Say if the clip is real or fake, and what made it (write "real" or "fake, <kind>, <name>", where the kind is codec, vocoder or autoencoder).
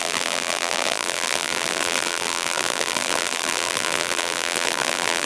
fake, vocoder, BigVGAN v2